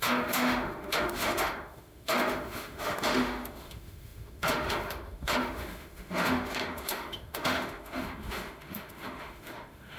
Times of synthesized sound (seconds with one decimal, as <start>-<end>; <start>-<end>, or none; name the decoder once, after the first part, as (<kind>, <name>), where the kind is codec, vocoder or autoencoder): 0.0-10.0 (autoencoder, DAC-VAE)